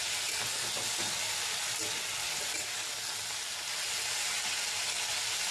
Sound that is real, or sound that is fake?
real